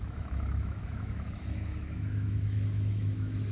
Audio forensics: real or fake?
fake